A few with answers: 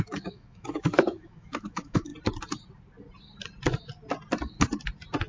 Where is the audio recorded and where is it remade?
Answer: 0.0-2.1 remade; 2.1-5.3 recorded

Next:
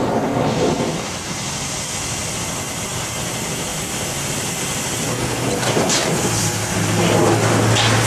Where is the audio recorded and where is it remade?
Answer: 0.0-8.1 recorded

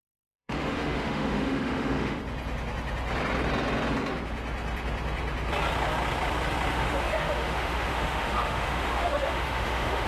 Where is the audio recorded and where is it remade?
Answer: 0.0-2.2 remade; 2.2-6.7 recorded; 6.7-10.1 remade

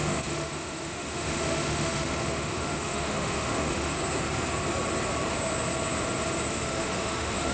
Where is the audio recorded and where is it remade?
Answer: 0.0-3.9 remade; 3.9-6.5 recorded; 6.5-7.5 remade

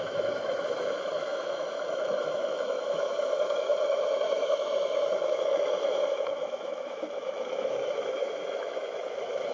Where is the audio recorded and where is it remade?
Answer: 0.0-9.5 remade

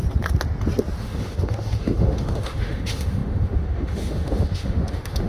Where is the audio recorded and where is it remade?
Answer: 0.0-1.0 recorded; 1.0-5.3 remade

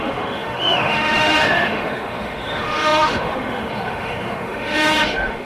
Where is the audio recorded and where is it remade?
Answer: 0.0-5.4 remade